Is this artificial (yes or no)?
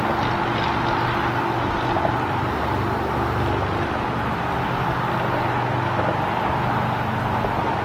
no